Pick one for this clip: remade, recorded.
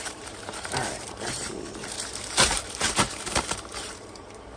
remade